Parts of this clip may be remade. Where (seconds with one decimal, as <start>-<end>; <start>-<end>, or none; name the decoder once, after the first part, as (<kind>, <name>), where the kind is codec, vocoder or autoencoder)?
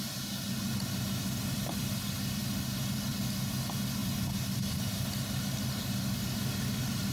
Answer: none